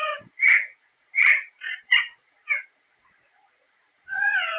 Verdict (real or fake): fake